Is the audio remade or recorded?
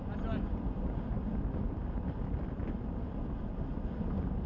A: recorded